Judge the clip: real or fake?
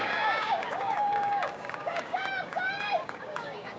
fake